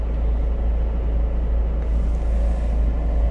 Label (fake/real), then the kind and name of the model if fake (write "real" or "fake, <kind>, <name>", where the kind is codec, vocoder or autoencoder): real